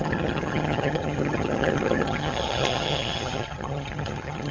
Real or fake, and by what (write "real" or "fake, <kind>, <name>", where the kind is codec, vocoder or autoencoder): fake, vocoder, HiFi-GAN